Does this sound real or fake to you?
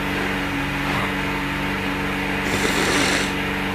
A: real